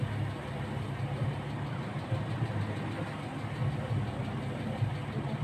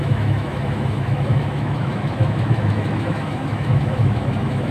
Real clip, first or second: first